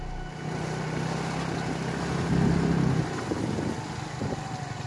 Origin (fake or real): real